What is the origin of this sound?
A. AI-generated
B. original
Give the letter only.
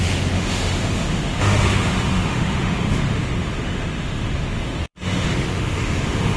A